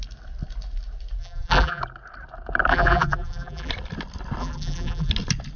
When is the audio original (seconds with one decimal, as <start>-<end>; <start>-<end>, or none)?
0.0-1.2; 1.8-2.7; 3.7-4.4; 5.1-5.6